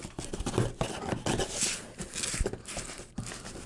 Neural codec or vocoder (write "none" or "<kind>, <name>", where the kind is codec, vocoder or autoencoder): none